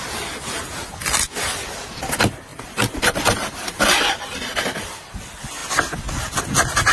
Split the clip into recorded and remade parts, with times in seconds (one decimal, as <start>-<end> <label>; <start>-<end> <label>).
0.0-2.5 recorded; 2.5-3.8 remade; 3.8-6.9 recorded